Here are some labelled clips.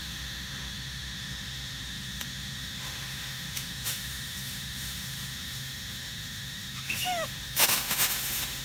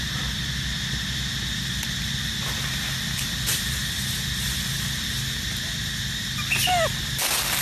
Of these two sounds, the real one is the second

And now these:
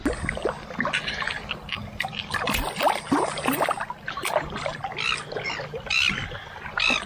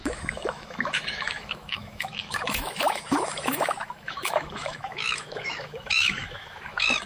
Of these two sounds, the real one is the first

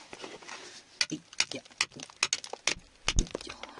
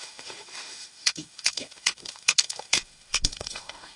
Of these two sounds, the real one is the first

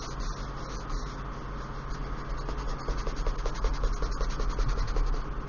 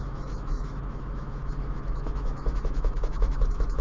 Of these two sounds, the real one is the first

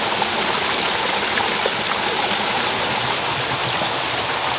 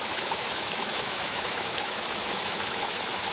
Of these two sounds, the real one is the first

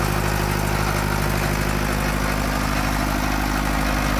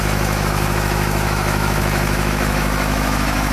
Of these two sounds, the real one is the first